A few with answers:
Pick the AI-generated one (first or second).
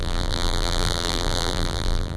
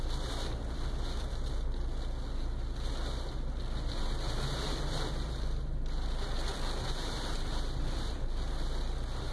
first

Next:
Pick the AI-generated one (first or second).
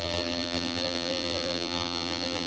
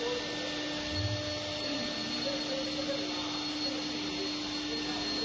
first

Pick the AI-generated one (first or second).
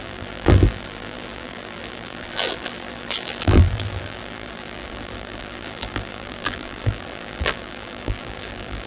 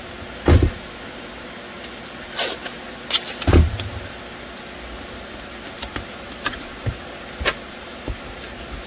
first